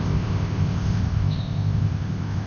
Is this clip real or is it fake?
fake